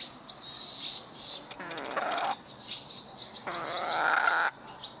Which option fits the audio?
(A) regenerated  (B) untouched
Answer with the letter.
B